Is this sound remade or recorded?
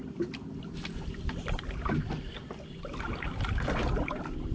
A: recorded